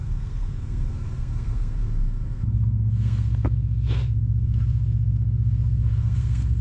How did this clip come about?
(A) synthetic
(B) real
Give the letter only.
A